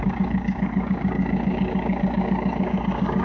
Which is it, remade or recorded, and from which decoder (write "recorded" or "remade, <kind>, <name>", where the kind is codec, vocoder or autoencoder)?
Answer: remade, codec, DAC